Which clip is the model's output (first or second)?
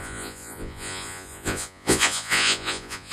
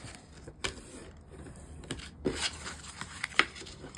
first